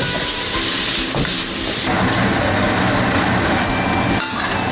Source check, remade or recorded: recorded